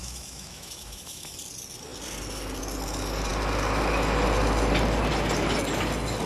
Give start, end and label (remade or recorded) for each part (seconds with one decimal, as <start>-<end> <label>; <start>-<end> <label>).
0.0-1.3 remade; 1.3-6.3 recorded